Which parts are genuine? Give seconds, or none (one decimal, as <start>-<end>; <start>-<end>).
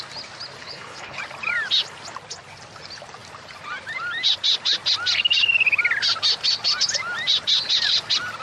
0.0-0.6; 1.2-8.4